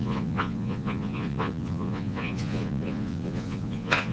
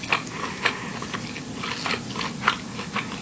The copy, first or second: first